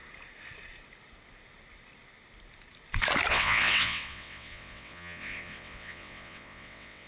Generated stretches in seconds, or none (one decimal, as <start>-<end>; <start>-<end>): 3.3-7.1